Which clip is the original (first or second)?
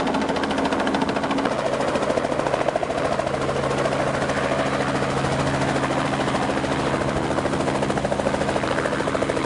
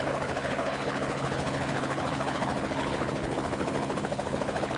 first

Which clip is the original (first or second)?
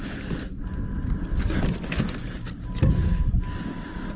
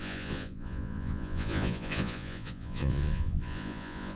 first